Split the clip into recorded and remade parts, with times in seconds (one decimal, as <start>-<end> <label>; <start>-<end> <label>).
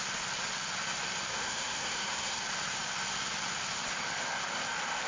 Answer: 0.0-1.3 recorded; 1.3-2.4 remade; 2.4-5.1 recorded